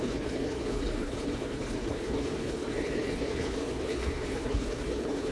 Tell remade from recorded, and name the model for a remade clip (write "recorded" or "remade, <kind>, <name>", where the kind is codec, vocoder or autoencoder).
remade, codec, HILCodec